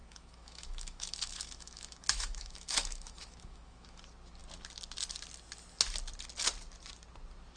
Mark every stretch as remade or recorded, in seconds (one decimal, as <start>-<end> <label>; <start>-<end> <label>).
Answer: 0.0-4.0 remade; 4.0-7.6 recorded